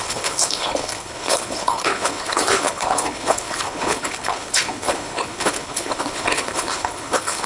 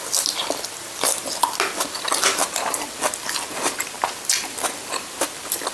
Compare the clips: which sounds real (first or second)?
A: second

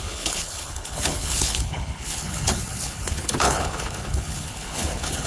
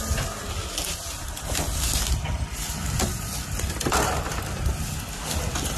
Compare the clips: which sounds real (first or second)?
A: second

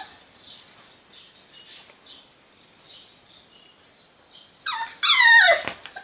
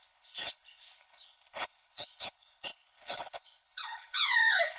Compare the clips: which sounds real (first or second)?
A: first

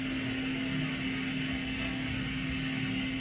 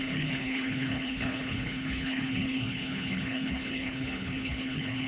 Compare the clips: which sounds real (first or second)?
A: first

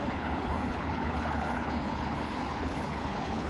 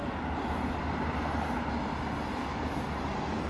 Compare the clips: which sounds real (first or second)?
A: second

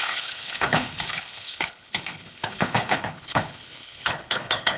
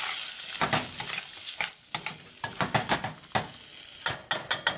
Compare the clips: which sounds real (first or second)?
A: second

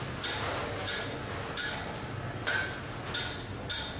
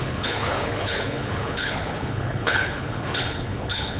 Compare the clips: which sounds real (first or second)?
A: first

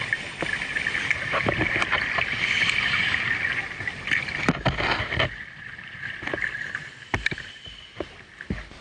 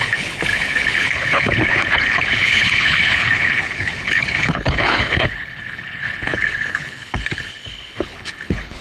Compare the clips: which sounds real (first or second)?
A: first